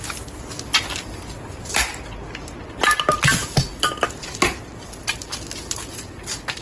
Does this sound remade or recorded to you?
recorded